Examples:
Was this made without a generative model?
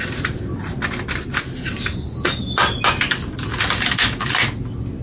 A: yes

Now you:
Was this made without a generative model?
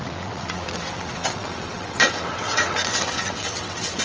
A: no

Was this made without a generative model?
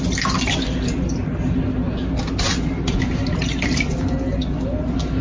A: yes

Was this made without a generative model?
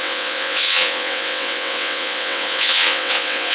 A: no